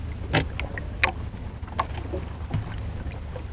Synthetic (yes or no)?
no